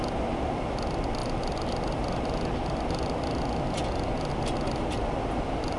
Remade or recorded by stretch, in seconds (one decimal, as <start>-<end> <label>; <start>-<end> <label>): 0.0-5.8 recorded